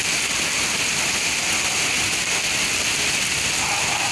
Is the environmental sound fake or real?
real